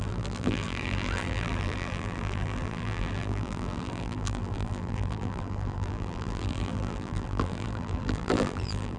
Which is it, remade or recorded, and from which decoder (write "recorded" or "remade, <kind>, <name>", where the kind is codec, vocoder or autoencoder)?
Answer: remade, vocoder, BigVGAN v2